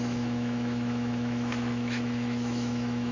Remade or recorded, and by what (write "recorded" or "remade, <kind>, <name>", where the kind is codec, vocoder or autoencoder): remade, autoencoder, DAC-VAE